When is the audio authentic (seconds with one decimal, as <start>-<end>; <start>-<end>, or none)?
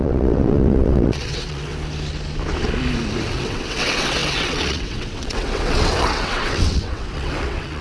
1.7-3.3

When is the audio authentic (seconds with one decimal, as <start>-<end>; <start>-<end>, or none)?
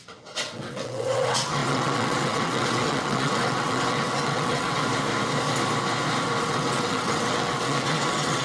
4.8-6.4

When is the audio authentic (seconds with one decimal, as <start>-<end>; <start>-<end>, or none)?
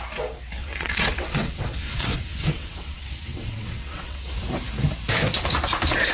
0.0-0.6; 4.3-6.1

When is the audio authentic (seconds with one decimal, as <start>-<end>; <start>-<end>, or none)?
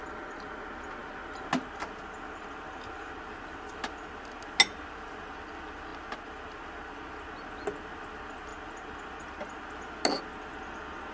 0.0-11.1